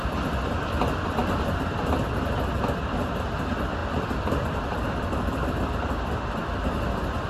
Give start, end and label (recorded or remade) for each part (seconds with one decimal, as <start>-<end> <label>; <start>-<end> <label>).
0.0-1.2 remade; 1.2-3.3 recorded; 3.3-7.3 remade